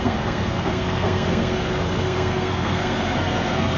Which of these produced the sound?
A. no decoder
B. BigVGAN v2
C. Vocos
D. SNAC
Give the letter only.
D